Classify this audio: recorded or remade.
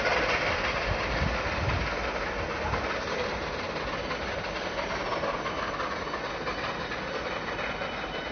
recorded